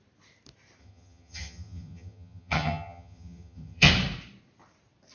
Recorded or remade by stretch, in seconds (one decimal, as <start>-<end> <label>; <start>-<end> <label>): 0.0-0.8 recorded; 0.8-3.9 remade; 3.9-5.1 recorded